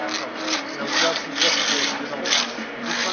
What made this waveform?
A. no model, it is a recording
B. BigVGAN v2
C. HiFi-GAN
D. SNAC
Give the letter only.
A